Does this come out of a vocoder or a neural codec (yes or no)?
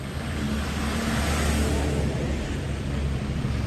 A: no